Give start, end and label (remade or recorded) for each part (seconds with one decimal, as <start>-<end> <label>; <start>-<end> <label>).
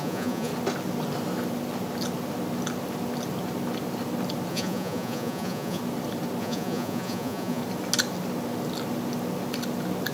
0.0-0.5 remade; 0.5-4.5 recorded; 4.5-5.8 remade; 5.8-6.4 recorded; 6.4-7.6 remade; 7.6-10.1 recorded